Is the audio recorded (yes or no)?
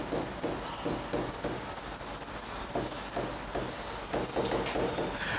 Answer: yes